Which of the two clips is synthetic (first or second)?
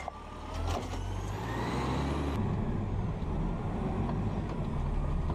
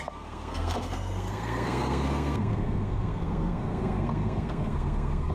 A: second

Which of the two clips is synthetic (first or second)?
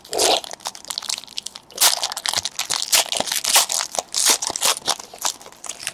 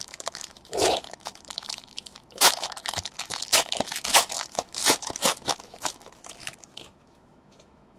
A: second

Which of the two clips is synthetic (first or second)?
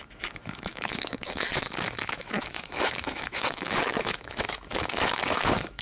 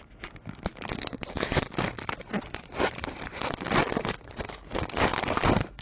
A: first